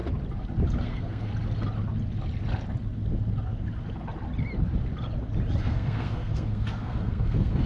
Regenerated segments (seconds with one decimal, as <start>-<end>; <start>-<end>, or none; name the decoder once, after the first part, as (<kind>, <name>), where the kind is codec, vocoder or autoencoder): 0.8-1.3 (codec, SNAC); 5.6-7.7